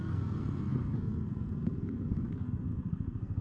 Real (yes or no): no